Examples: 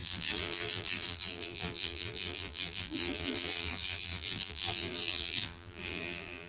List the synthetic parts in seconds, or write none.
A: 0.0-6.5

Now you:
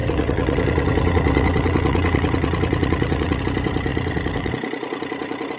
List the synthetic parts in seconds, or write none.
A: 0.0-3.4; 3.9-4.5

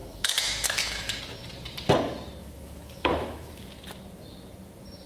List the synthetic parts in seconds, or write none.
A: 0.0-1.2; 2.4-3.7

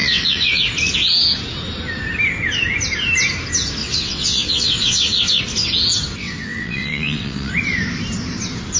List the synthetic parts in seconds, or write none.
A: 0.0-0.6; 3.8-5.4; 6.2-7.5

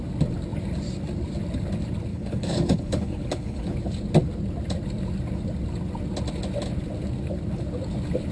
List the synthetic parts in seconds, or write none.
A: 2.1-3.7